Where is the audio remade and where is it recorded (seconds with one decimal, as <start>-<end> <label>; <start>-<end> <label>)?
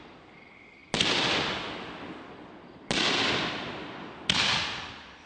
0.0-5.3 recorded